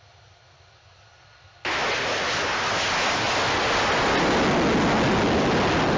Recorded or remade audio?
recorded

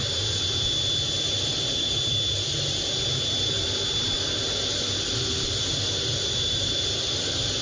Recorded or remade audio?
recorded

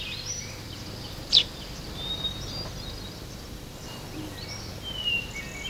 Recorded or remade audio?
remade